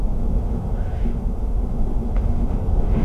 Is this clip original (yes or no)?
no